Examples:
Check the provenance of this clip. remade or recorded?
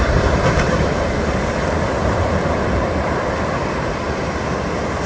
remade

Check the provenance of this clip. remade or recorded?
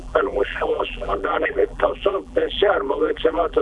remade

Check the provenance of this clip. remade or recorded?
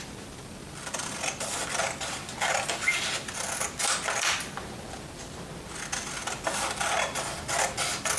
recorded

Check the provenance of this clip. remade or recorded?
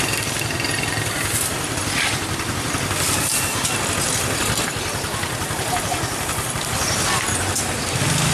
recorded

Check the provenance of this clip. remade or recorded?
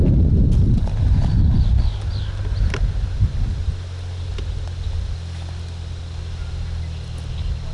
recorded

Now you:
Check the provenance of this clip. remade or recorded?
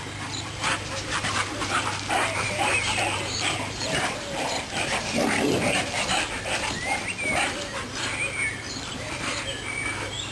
remade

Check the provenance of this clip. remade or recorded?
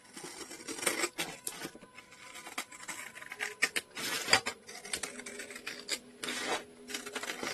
recorded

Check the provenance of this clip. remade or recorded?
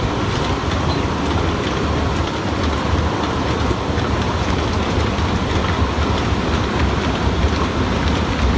remade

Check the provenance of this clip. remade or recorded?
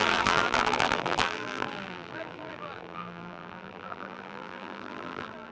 remade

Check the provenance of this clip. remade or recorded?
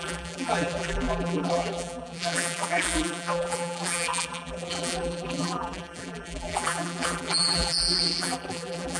remade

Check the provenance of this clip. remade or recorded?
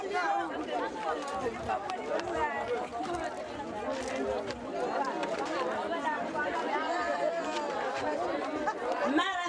recorded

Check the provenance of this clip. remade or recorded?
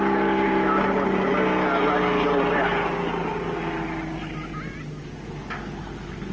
recorded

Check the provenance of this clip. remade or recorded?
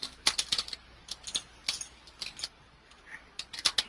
recorded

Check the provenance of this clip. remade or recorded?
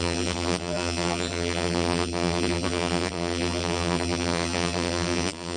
remade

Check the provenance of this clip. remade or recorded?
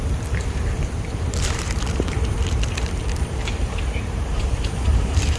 remade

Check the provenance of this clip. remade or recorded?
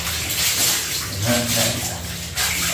recorded